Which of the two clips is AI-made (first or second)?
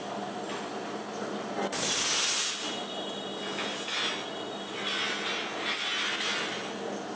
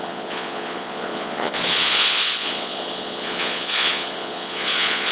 second